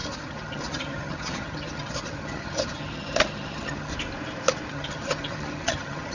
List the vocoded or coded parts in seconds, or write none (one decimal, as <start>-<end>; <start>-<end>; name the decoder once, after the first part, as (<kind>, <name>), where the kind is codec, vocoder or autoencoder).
0.0-3.9 (vocoder, HiFi-GAN); 4.7-6.1